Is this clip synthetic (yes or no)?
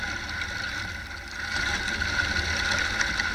no